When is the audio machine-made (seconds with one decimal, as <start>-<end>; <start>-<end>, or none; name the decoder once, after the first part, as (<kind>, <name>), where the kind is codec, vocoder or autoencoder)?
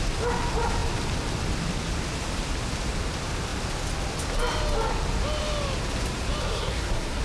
6.4-7.2 (codec, SNAC)